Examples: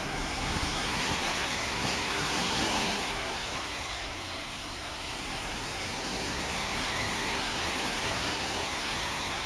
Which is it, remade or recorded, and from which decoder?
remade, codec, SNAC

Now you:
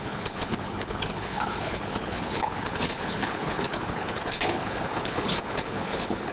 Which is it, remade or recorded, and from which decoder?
remade, codec, HILCodec